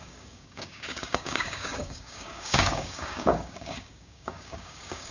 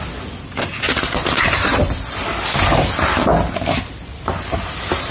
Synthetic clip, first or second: first